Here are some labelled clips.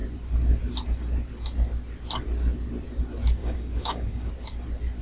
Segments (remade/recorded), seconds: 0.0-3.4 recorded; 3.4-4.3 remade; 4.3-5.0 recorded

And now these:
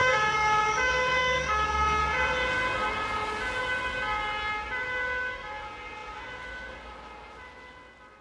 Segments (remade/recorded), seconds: 0.0-2.0 remade; 2.0-8.2 recorded

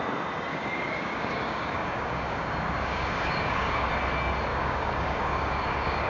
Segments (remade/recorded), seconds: 0.0-0.5 recorded; 0.5-3.9 remade; 3.9-4.5 recorded; 4.5-6.1 remade

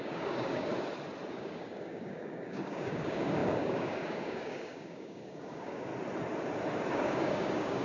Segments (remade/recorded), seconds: 0.0-0.7 remade; 0.7-1.3 recorded; 1.3-5.9 remade; 5.9-6.9 recorded; 6.9-7.8 remade

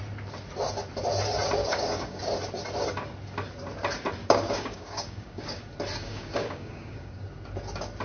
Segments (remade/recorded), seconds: 0.0-1.6 recorded; 1.6-2.2 remade; 2.2-4.2 recorded; 4.2-5.6 remade; 5.6-6.0 recorded; 6.0-7.2 remade; 7.2-8.0 recorded

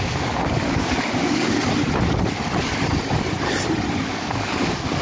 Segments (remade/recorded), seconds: 0.0-1.6 remade; 1.6-4.0 recorded; 4.0-5.0 remade

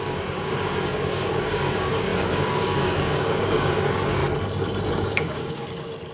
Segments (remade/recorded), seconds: 0.0-4.2 remade; 4.2-4.9 recorded; 4.9-6.1 remade

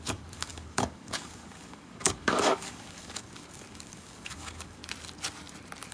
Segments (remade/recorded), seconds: 0.0-4.8 remade; 4.8-5.9 recorded